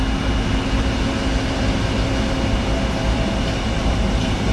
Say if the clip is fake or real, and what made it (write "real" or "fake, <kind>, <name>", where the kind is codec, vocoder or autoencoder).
real